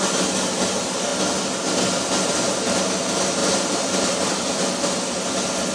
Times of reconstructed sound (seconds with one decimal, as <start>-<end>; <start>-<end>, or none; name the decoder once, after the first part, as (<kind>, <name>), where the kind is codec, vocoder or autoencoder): 3.4-4.7 (vocoder, BigVGAN v2)